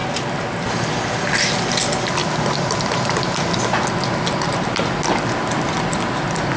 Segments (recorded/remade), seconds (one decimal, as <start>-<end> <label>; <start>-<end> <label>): 0.0-6.6 recorded